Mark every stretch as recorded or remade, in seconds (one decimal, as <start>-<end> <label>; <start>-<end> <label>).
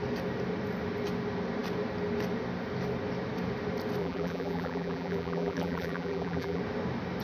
0.0-4.0 recorded; 4.0-6.6 remade; 6.6-7.2 recorded